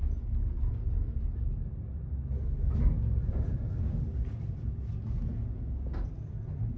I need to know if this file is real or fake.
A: real